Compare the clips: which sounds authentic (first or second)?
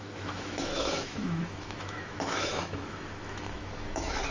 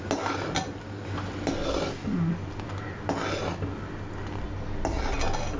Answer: second